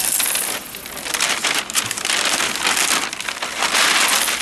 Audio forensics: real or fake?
real